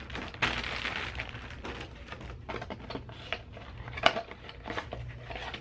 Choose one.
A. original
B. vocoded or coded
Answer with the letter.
A